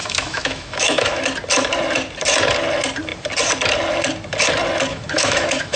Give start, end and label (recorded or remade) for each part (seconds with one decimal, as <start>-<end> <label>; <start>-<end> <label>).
0.0-1.2 remade; 1.2-4.9 recorded; 4.9-5.8 remade